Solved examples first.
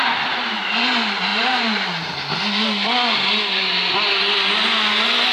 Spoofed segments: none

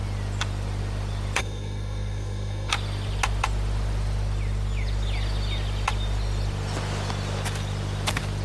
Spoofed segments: 1.4-2.7 (codec, SNAC)

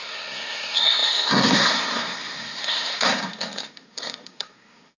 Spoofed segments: 0.0-5.0 (codec, SNAC)

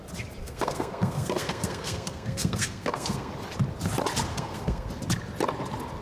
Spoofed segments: 0.4-3.3 (codec, SNAC); 4.3-4.9

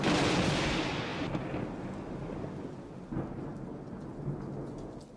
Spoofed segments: none

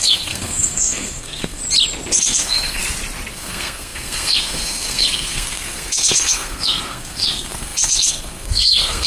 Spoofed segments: 0.0-1.6 (codec, SNAC); 2.2-2.8; 3.3-9.1

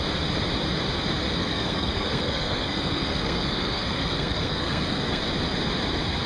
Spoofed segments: 1.4-5.2 (codec, SNAC)